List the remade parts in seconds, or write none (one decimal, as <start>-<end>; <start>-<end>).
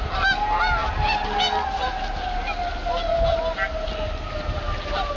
none